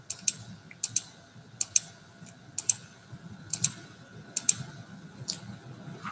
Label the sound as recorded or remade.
recorded